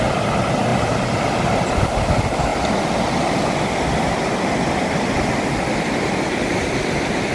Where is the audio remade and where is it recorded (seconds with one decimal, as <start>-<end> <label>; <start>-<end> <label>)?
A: 0.0-0.7 recorded; 0.7-1.4 remade; 1.4-7.3 recorded